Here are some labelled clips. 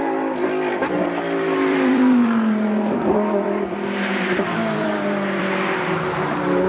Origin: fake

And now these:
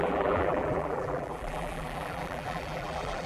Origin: fake